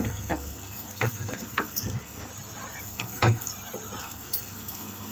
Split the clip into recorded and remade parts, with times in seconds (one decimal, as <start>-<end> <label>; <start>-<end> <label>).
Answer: 0.0-2.3 remade; 2.3-2.8 recorded; 2.8-3.5 remade; 3.5-4.0 recorded; 4.0-5.1 remade